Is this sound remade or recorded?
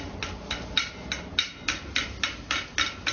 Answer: recorded